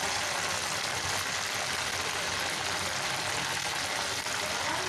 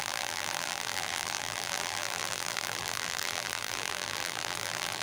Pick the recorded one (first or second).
first